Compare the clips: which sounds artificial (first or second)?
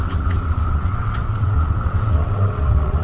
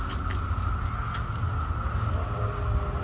first